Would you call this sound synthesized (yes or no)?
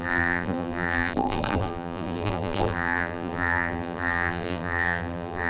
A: yes